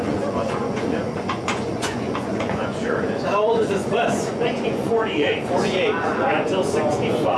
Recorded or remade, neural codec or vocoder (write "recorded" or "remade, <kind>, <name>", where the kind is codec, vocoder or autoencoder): remade, vocoder, Vocos